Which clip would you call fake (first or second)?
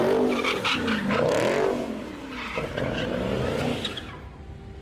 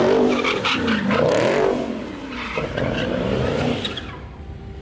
second